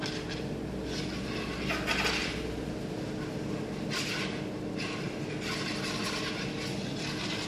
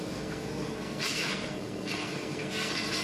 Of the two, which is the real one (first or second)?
first